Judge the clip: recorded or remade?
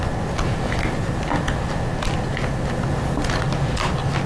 recorded